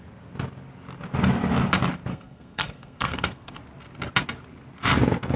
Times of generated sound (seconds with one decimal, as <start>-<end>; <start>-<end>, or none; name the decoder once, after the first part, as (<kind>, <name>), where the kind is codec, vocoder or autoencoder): 2.1-3.6 (codec, SNAC)